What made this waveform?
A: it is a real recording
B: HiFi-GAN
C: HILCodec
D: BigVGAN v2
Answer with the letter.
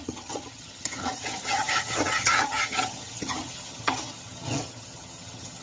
B